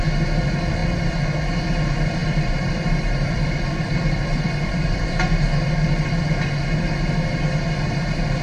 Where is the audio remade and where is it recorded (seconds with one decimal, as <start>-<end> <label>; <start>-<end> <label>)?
0.0-2.2 recorded; 2.2-5.0 remade; 5.0-8.4 recorded